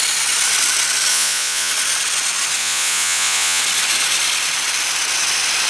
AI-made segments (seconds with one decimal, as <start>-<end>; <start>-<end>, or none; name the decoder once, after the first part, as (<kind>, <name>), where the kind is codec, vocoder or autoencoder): 1.1-1.7 (vocoder, Vocos); 2.6-3.6